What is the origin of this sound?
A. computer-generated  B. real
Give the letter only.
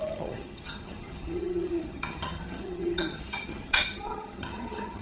A